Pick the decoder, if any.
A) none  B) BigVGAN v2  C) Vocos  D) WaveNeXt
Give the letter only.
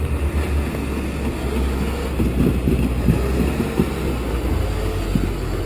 A